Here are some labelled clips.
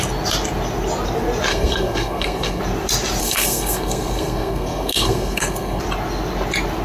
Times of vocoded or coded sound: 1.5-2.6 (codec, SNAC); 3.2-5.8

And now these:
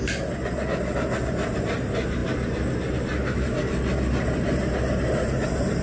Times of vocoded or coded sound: none

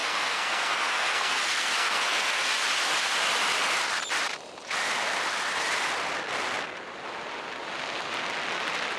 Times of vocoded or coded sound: 0.0-2.5 (codec, SNAC)

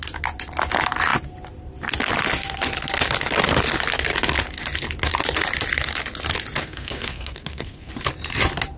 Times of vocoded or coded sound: 6.6-7.9 (codec, SNAC)

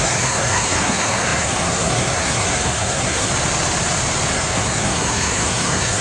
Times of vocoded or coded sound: 0.0-3.3 (codec, SNAC); 4.3-6.0